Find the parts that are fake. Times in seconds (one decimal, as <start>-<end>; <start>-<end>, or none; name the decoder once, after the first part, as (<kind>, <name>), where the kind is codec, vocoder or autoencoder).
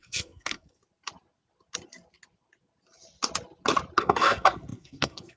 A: 0.0-0.8 (codec, SNAC); 4.0-5.4